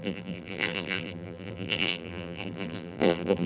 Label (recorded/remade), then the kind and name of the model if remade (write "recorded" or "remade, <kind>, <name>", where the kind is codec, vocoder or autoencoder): remade, vocoder, BigVGAN v2